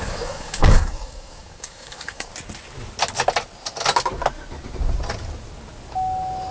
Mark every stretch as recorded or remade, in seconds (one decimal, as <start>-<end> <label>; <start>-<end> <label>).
0.0-2.3 remade; 2.3-6.5 recorded